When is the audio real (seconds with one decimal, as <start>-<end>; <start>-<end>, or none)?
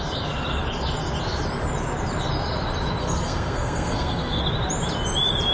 0.0-3.0; 4.4-5.5